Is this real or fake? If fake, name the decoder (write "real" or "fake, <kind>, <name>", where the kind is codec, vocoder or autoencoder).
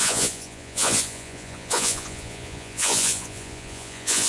fake, vocoder, Vocos